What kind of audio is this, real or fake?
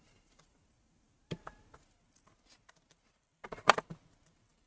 real